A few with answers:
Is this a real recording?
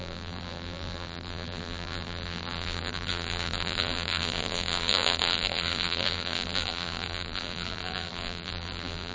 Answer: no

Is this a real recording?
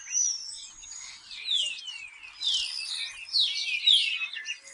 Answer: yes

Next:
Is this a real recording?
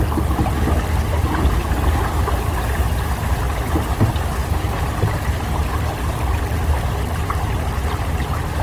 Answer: yes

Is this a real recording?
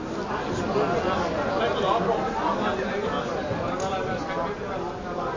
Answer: yes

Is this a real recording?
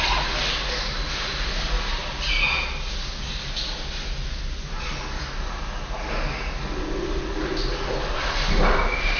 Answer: yes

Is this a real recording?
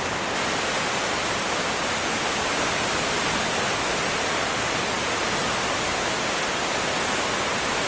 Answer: yes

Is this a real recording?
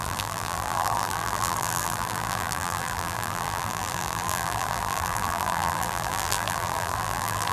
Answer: no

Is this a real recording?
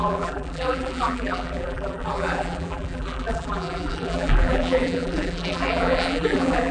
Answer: no